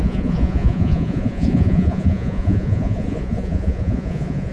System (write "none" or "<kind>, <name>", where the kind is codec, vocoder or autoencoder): vocoder, Vocos